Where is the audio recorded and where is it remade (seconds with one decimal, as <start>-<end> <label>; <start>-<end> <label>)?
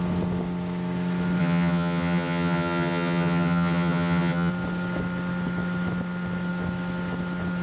0.0-1.4 recorded; 1.4-4.5 remade; 4.5-7.6 recorded